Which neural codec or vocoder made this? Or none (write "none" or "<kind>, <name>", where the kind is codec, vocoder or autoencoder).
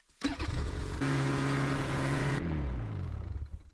vocoder, Vocos